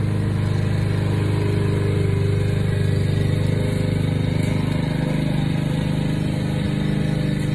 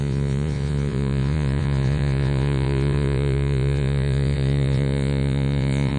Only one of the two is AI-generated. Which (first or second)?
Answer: second